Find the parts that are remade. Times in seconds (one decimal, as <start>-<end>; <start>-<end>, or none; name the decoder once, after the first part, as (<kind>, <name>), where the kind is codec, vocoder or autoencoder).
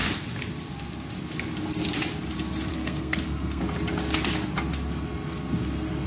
2.7-3.6 (codec, SNAC)